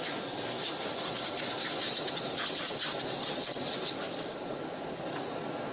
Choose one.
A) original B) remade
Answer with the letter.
A